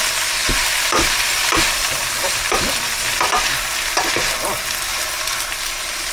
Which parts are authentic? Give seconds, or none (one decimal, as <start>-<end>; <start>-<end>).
0.0-0.4; 3.0-4.9